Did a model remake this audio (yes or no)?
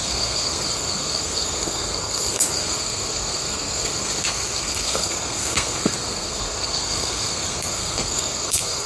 yes